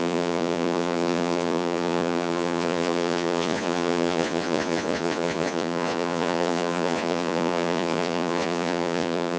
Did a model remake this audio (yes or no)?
yes